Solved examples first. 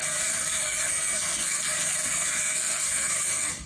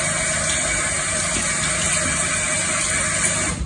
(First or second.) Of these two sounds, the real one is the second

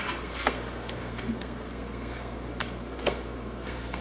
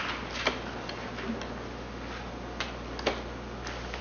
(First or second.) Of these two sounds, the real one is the second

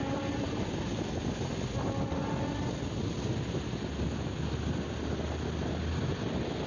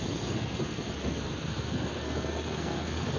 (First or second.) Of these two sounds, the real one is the first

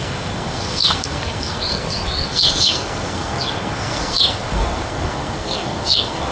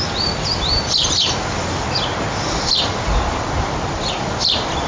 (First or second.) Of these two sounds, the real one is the second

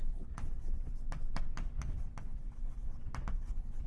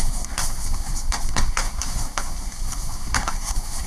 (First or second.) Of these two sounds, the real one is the first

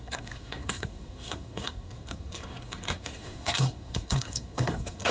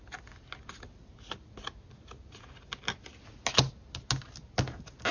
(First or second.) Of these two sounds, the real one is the second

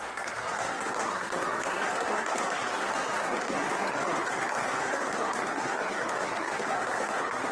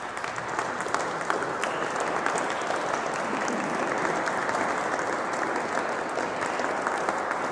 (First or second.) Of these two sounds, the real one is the second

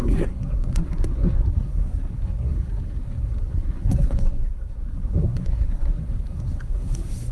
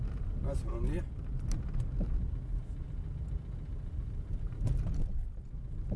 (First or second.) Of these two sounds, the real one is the second